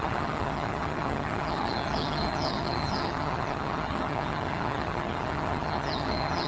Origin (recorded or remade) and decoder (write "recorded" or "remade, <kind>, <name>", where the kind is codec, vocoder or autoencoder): remade, vocoder, HiFi-GAN